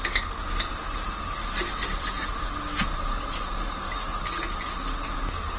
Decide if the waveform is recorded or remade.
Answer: recorded